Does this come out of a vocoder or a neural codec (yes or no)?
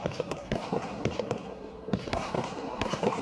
yes